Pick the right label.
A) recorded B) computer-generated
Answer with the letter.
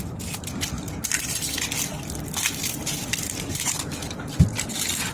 A